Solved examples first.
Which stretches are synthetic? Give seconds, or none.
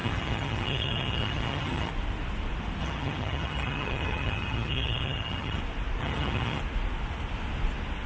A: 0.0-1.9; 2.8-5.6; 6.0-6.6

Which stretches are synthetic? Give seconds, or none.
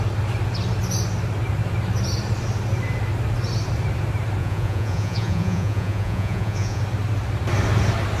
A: 4.4-6.8